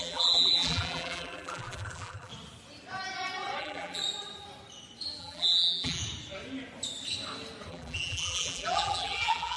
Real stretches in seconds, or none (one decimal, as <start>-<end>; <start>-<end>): 2.3-3.6; 4.0-5.2; 6.0-7.7